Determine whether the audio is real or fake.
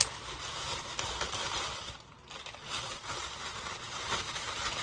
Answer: real